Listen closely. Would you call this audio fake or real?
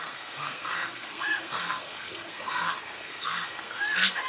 fake